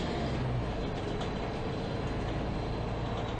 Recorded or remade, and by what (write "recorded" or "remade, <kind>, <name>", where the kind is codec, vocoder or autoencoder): recorded